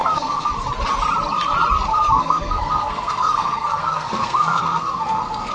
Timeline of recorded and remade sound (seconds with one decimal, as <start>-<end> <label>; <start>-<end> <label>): 0.0-0.5 remade; 0.5-1.9 recorded; 1.9-5.5 remade